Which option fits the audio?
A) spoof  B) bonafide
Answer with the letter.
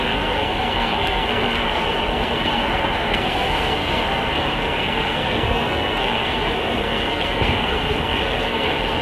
A